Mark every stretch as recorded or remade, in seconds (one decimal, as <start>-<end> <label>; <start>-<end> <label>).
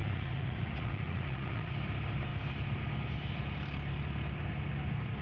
0.0-1.7 remade; 1.7-5.2 recorded